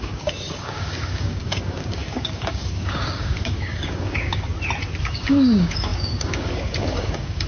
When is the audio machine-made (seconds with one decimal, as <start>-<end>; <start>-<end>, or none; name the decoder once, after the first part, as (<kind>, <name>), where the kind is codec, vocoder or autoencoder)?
0.0-4.5 (codec, DAC); 5.0-7.5